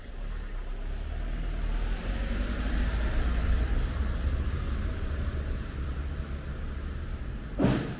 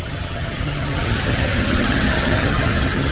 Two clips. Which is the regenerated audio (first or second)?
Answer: second